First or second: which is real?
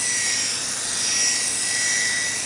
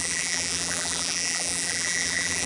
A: first